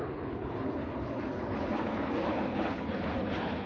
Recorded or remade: remade